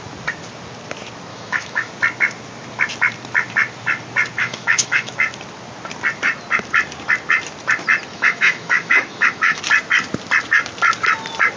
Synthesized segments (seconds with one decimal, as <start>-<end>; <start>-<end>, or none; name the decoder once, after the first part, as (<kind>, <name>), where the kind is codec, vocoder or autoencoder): 1.3-1.9 (autoencoder, DAC-VAE); 4.4-5.1; 8.1-9.6